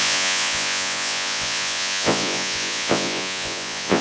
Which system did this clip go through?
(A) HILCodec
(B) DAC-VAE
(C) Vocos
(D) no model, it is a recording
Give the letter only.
C